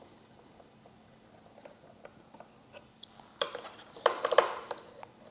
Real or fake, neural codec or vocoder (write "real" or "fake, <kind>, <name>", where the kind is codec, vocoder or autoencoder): real